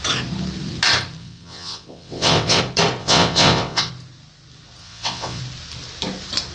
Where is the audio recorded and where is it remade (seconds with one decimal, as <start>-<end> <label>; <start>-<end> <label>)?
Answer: 0.0-1.2 recorded; 1.2-2.6 remade; 2.6-3.0 recorded; 3.0-3.9 remade; 3.9-4.8 recorded; 4.8-5.4 remade; 5.4-6.5 recorded